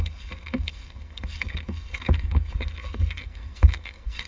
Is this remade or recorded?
remade